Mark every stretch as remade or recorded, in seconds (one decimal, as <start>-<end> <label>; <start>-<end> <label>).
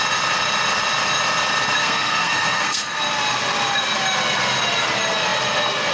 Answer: 0.0-1.8 recorded; 1.8-3.0 remade; 3.0-5.9 recorded